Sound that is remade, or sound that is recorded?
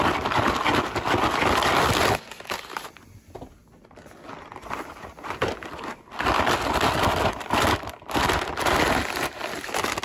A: recorded